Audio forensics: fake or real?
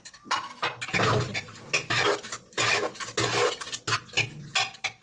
real